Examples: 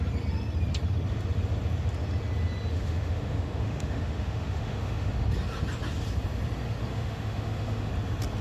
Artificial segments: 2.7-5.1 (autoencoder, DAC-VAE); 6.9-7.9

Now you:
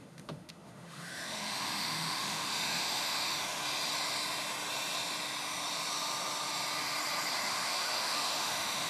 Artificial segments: 0.0-3.6 (autoencoder, DAC-VAE); 7.3-8.9

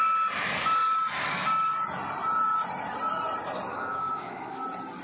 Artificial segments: 3.7-4.6 (autoencoder, DAC-VAE)

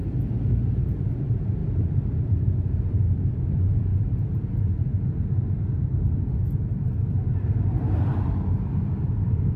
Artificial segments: none